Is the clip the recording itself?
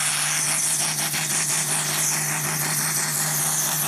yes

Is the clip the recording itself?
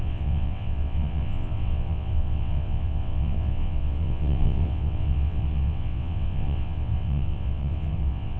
no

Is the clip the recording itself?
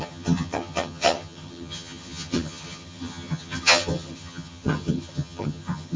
no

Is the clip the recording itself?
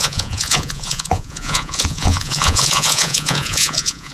no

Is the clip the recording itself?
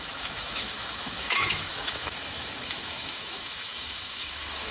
no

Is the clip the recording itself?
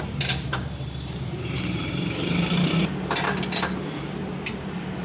no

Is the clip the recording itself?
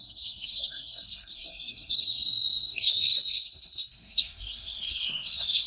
no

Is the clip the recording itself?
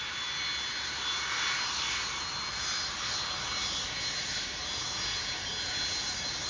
yes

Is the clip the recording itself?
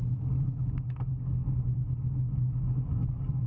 yes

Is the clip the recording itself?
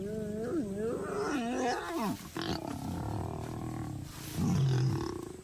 yes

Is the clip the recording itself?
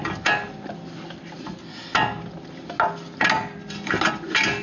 yes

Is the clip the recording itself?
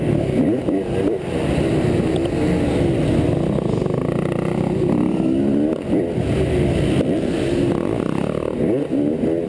yes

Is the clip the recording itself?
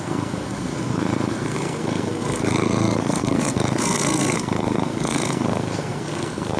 no